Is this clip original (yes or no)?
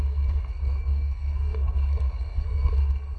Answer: no